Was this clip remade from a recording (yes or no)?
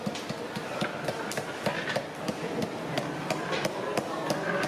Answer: yes